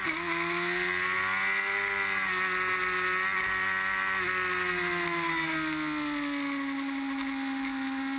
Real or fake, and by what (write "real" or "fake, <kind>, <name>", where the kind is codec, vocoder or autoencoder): real